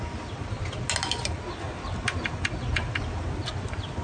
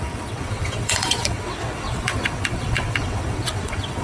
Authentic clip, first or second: first